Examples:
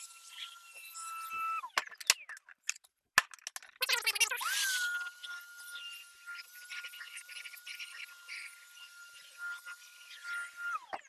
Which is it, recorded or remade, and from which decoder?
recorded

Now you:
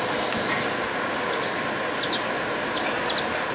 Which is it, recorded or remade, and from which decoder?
recorded